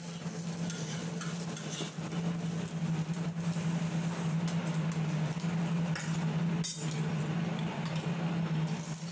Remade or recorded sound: recorded